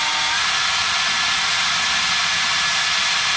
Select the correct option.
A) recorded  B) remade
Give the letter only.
A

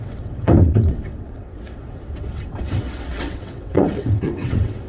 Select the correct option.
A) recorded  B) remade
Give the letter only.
B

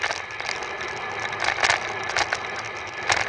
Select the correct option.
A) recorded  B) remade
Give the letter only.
A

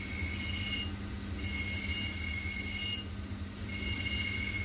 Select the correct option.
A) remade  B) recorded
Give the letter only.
B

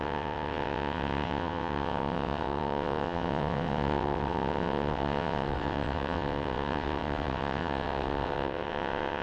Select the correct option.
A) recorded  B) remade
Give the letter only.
B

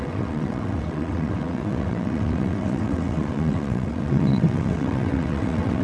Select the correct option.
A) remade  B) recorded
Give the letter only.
A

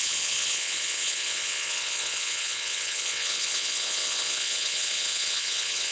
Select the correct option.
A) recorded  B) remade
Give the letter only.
B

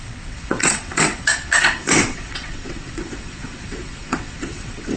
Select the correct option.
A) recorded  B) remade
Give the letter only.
B